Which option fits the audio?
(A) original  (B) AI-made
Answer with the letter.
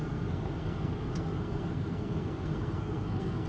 B